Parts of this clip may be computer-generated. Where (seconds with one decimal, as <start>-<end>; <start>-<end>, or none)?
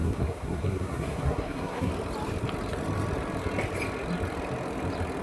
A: 0.0-1.9